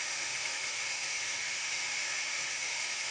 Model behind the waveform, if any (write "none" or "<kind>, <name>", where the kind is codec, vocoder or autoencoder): autoencoder, DAC-VAE